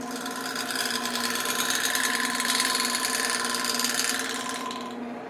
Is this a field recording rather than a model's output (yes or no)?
yes